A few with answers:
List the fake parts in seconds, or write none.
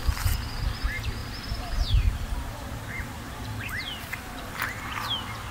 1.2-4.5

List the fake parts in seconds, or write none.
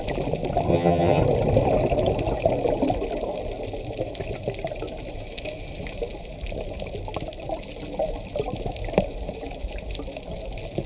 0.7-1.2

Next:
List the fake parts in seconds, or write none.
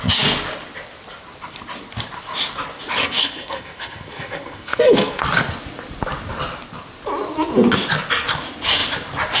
3.0-5.2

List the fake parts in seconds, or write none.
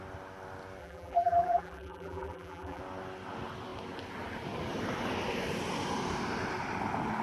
0.8-2.8